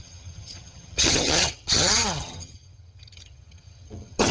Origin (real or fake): fake